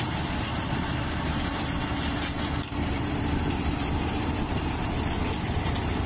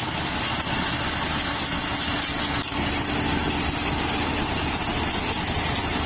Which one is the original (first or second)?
second